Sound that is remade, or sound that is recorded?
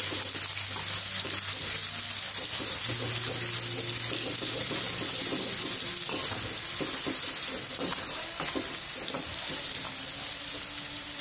recorded